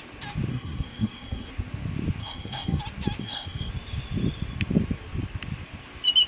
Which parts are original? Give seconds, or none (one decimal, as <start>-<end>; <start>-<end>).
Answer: 0.0-0.5; 1.5-2.2; 2.8-3.2; 3.7-6.3